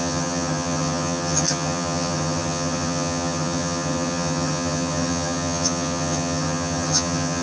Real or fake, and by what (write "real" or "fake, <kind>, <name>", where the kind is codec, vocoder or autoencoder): fake, vocoder, HiFi-GAN